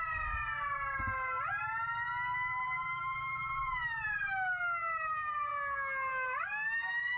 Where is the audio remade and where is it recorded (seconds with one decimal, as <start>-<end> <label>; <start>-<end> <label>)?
0.0-2.5 recorded; 2.5-4.0 remade; 4.0-7.2 recorded